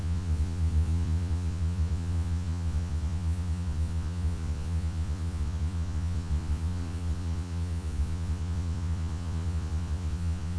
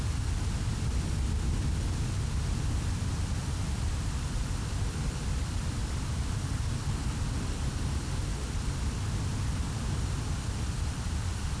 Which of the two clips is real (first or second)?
second